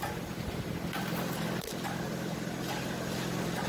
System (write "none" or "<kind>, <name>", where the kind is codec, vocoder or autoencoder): none